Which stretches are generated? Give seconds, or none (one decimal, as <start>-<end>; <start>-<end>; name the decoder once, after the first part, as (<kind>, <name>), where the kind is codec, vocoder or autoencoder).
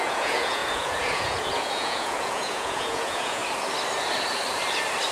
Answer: 0.0-3.4 (vocoder, Vocos)